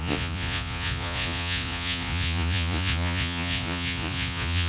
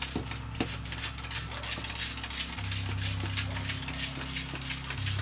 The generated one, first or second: first